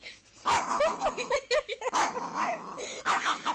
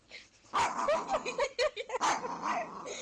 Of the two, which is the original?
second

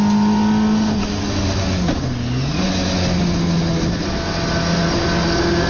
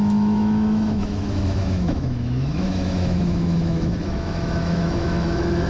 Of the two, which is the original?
first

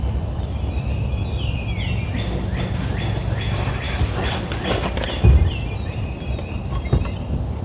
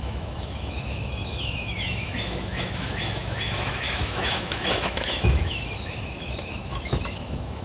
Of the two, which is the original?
first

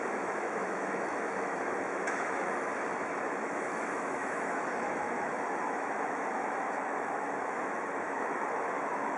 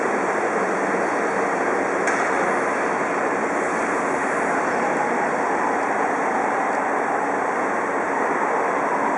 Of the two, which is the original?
second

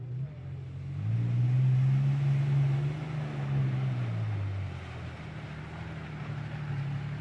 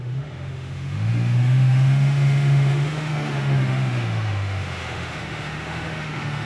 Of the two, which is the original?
first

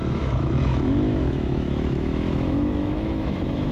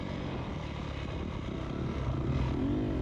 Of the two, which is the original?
second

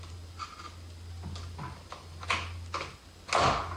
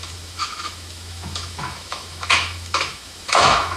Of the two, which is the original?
first